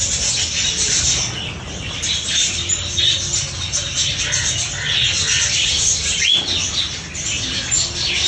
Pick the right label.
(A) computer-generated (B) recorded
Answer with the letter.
B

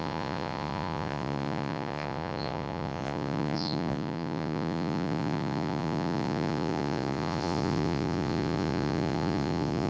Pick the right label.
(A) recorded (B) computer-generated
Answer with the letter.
B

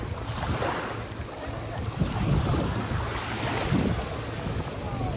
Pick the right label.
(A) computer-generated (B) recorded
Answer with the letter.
B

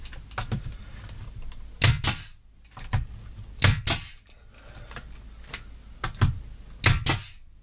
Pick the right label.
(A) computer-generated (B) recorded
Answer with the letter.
B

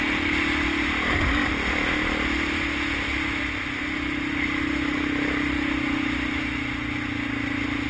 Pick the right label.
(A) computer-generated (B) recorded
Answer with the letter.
B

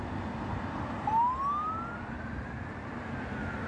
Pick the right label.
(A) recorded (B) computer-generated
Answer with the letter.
A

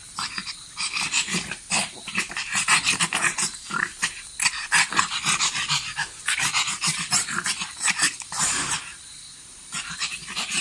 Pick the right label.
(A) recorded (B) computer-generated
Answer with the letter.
B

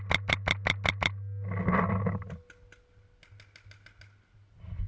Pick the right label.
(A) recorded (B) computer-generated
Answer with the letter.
A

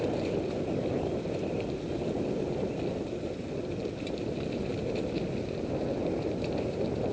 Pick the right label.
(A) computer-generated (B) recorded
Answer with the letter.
B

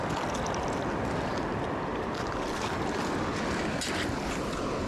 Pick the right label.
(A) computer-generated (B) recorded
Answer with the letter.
B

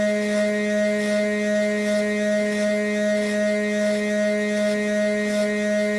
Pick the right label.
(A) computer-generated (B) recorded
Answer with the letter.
B